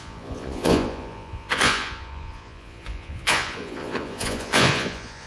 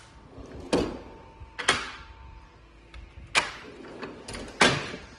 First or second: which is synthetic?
first